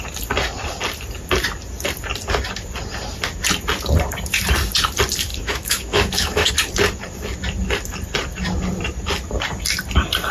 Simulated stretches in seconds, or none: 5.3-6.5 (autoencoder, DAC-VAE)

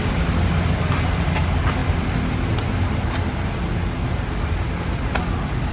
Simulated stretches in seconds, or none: none

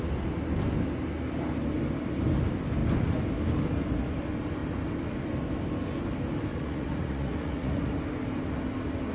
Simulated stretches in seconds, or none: 6.5-8.0 (vocoder, Vocos)

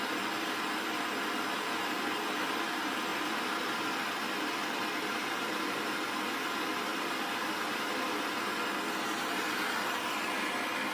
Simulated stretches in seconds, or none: 3.1-4.2 (vocoder, BigVGAN v2); 6.9-8.2